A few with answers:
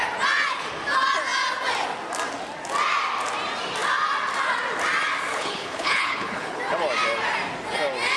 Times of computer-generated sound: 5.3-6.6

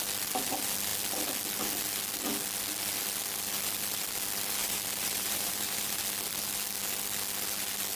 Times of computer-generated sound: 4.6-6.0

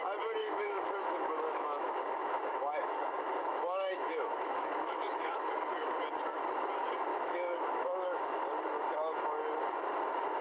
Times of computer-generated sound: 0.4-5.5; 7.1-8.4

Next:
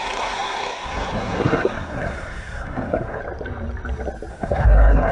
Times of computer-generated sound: 0.0-3.2; 4.3-5.1

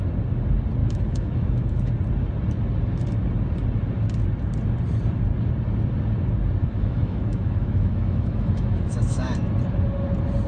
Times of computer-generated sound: 0.8-1.9; 6.6-9.5